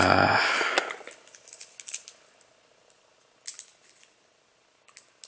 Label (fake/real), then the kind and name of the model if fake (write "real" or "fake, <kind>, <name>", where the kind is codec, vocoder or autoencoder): real